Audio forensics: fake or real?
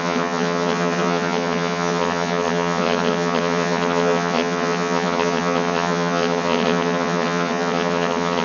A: fake